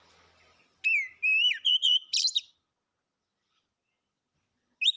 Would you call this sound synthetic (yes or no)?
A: no